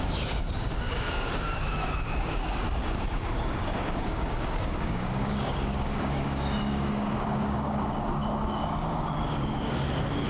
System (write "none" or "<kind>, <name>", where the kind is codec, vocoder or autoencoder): codec, DAC